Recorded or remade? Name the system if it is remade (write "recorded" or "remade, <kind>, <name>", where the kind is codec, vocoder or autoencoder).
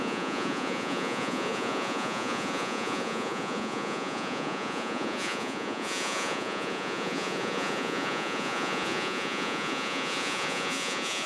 remade, vocoder, Vocos